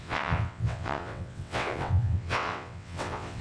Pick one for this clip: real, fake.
fake